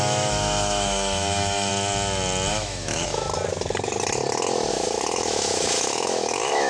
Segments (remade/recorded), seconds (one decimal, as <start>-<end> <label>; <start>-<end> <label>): 0.0-1.7 remade; 1.7-2.5 recorded; 2.5-3.3 remade; 3.3-4.7 recorded; 4.7-6.7 remade

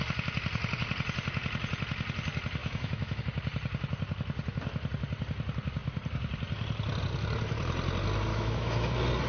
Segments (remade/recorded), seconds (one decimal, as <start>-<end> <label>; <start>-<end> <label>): 0.0-2.6 recorded; 2.6-3.2 remade; 3.2-8.3 recorded; 8.3-8.9 remade; 8.9-9.3 recorded

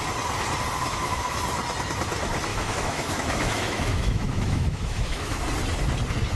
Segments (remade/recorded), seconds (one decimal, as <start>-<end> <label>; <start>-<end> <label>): 0.0-0.8 recorded; 0.8-1.4 remade; 1.4-2.5 recorded; 2.5-5.4 remade; 5.4-6.4 recorded

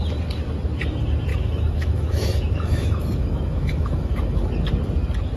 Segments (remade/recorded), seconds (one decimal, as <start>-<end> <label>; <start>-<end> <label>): 0.0-1.3 recorded; 1.3-4.5 remade; 4.5-5.4 recorded